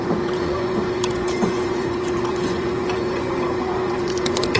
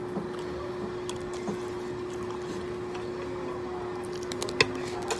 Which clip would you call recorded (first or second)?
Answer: second